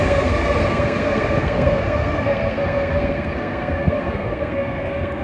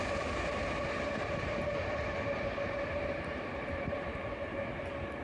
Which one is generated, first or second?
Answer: first